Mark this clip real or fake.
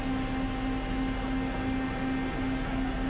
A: real